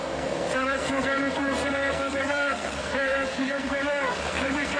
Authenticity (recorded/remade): remade